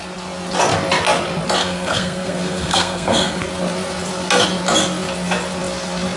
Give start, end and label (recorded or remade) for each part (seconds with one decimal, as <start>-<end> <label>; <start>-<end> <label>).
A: 0.0-1.6 recorded; 1.6-3.4 remade; 3.4-6.2 recorded